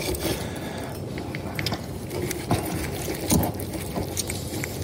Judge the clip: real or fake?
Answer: real